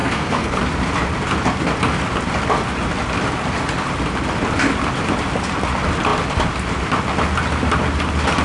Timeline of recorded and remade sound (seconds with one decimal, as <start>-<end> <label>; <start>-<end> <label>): 0.0-0.6 remade; 0.6-8.4 recorded